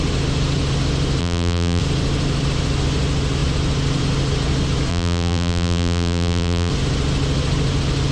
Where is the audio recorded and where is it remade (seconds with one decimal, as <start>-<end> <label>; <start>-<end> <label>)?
0.0-1.2 recorded; 1.2-1.8 remade; 1.8-4.9 recorded; 4.9-6.7 remade; 6.7-8.1 recorded